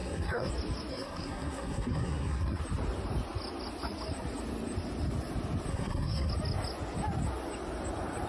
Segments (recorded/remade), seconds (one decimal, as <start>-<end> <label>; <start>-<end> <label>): 0.0-0.5 remade; 0.5-0.9 recorded; 0.9-2.6 remade; 2.6-5.7 recorded; 5.7-6.3 remade; 6.3-8.3 recorded